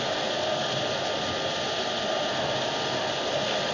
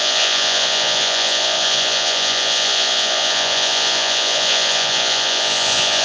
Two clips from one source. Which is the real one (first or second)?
first